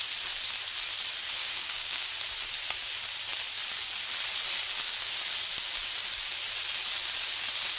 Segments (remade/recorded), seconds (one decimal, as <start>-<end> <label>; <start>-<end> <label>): 0.0-1.4 recorded; 1.4-2.1 remade; 2.1-7.8 recorded